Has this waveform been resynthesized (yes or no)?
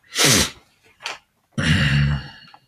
no